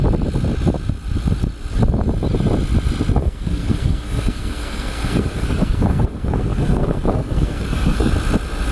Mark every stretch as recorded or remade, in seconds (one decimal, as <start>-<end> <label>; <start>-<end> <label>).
0.0-3.2 recorded; 3.2-8.1 remade; 8.1-8.7 recorded